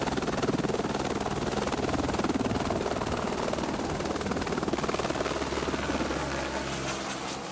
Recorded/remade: recorded